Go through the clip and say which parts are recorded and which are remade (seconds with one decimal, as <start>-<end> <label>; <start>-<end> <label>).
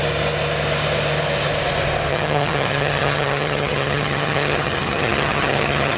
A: 0.0-2.1 recorded; 2.1-6.0 remade